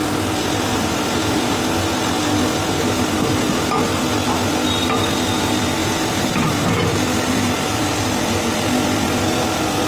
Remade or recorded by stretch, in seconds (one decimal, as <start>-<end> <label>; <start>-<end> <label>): 0.0-1.6 remade; 1.6-6.9 recorded; 6.9-8.4 remade; 8.4-9.9 recorded